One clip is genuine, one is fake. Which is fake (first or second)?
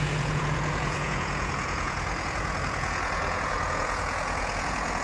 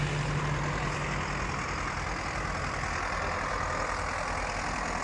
first